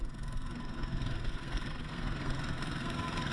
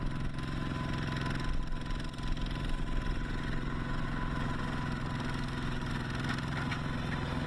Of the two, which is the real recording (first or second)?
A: second